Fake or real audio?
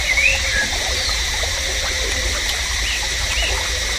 real